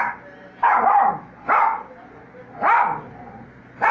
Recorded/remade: recorded